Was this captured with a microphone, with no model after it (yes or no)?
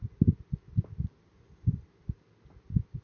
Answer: yes